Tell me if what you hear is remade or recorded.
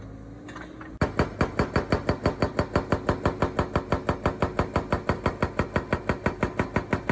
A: recorded